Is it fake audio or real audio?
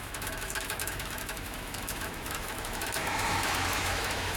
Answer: fake